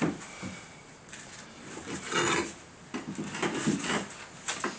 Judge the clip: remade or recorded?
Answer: recorded